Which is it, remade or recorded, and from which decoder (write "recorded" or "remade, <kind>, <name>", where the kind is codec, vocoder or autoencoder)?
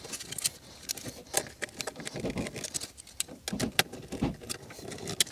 recorded